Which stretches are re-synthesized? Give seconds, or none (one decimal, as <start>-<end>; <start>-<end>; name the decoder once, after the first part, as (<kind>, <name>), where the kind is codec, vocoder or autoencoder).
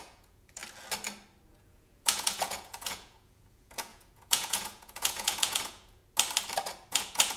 0.0-0.6 (vocoder, Vocos); 1.5-6.0; 6.9-7.4